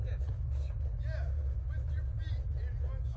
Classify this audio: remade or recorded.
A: recorded